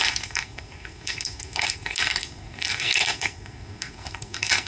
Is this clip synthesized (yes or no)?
yes